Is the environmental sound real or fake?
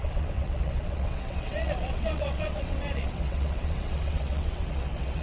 fake